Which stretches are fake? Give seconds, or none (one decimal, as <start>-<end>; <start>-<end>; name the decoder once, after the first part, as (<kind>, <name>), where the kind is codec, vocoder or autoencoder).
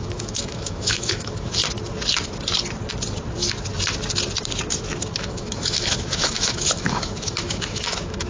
0.0-1.6 (autoencoder, DAC-VAE); 5.0-8.3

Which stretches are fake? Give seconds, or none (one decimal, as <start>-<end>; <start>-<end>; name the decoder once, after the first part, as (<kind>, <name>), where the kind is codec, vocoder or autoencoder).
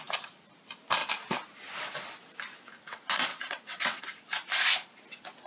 3.3-4.0 (vocoder, WaveNeXt)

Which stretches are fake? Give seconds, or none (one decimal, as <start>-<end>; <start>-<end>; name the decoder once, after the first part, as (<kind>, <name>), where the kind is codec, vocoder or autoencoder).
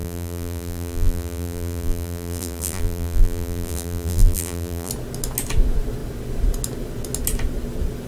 0.0-4.9 (vocoder, BigVGAN v2)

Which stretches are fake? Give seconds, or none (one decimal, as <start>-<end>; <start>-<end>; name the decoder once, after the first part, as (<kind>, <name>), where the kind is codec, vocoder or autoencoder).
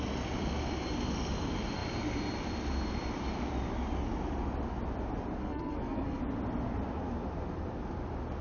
5.4-6.2 (codec, SNAC)